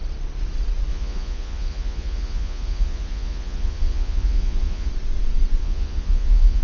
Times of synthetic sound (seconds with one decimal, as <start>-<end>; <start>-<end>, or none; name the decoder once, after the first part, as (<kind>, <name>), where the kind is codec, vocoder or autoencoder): 0.9-4.9 (vocoder, Vocos); 5.6-6.6